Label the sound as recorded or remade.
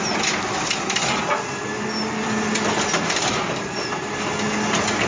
recorded